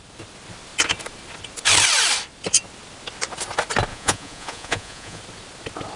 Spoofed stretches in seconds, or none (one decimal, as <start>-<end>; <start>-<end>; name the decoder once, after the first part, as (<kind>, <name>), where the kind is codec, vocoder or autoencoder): 3.9-5.2 (vocoder, Vocos)